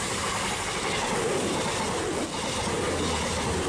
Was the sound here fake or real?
real